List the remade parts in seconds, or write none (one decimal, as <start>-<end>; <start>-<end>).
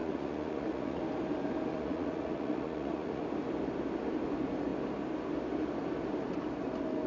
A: 0.0-1.0; 1.7-3.2